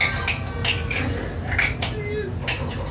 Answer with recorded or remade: recorded